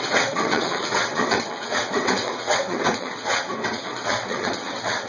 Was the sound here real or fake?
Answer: fake